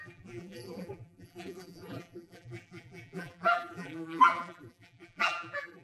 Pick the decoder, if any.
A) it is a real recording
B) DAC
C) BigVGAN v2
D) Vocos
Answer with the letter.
C